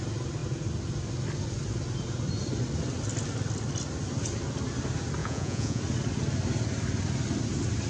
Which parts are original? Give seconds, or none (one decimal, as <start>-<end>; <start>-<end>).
0.0-5.2; 5.8-7.9